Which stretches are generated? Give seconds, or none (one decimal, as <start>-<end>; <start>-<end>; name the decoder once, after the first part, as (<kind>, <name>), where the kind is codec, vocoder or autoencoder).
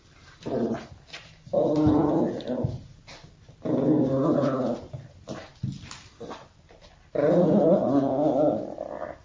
none